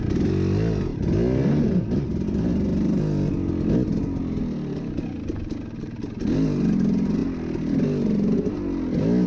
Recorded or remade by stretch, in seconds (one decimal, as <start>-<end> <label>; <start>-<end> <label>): 0.0-9.3 recorded